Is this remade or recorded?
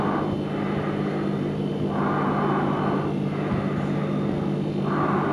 recorded